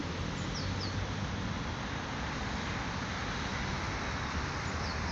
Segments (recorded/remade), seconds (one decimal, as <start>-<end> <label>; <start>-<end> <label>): 0.0-5.1 recorded